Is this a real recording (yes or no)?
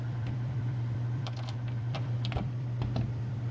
no